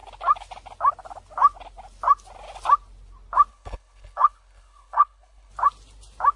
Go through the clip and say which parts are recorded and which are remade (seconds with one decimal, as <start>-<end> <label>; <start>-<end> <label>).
0.0-3.5 recorded; 3.5-5.5 remade; 5.5-6.4 recorded